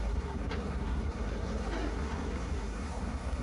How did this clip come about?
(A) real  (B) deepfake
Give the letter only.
B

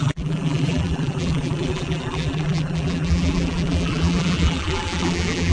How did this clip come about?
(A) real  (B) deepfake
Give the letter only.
B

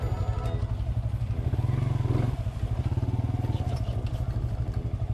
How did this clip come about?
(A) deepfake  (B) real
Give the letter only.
B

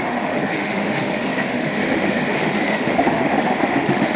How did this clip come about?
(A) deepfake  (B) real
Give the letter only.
A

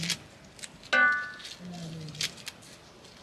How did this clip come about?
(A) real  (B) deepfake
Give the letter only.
A